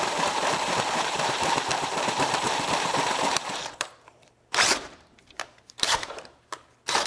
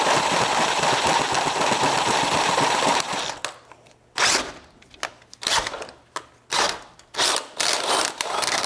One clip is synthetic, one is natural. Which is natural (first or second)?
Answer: second